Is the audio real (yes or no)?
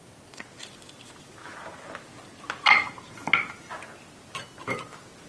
yes